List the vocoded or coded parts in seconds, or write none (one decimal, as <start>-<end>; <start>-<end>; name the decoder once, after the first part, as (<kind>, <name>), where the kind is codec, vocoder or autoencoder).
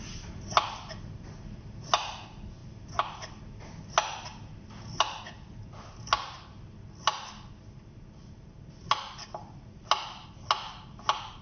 none